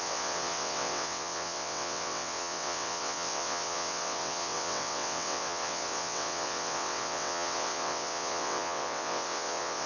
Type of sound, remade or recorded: remade